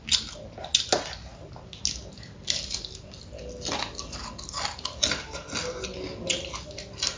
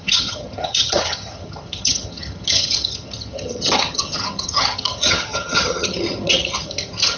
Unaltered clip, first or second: first